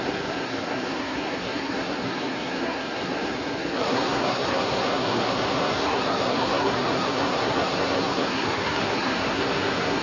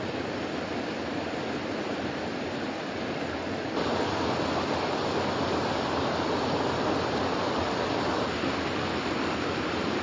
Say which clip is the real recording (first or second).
second